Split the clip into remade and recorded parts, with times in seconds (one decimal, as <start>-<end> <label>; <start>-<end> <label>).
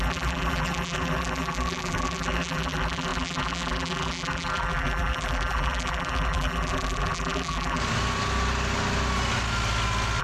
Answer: 0.0-7.8 remade; 7.8-10.2 recorded